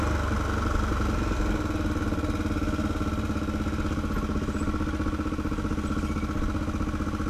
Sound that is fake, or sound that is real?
real